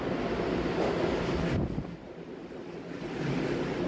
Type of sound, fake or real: real